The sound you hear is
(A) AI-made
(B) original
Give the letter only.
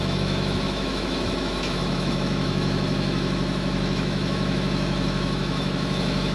A